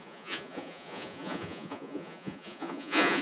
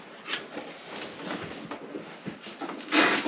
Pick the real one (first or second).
second